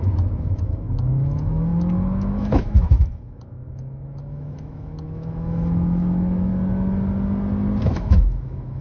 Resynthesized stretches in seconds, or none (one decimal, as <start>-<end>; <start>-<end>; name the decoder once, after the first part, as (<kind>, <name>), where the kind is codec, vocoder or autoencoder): 0.0-6.5 (autoencoder, DAC-VAE); 7.8-8.8